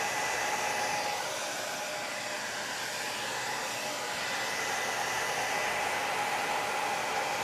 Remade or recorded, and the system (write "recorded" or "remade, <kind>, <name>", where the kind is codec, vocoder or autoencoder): recorded